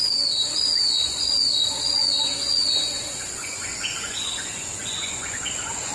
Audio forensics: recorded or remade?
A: remade